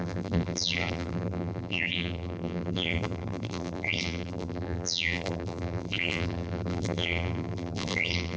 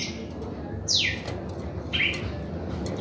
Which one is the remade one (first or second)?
first